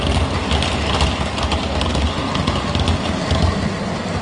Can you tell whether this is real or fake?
real